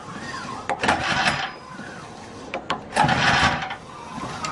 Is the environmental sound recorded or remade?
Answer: recorded